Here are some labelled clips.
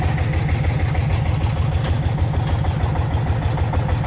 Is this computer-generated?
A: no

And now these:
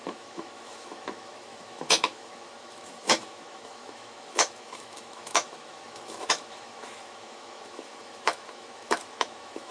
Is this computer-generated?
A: yes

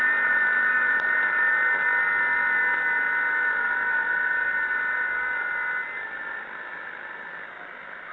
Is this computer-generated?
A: no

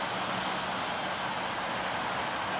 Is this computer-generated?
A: no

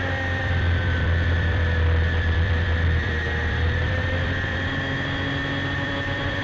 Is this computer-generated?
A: yes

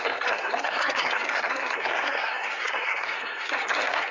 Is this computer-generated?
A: yes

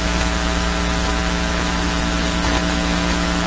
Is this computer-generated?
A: yes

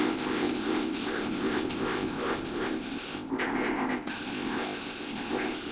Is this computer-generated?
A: yes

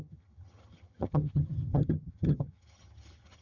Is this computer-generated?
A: yes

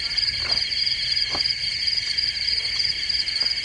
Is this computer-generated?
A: no